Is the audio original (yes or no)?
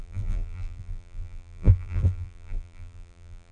no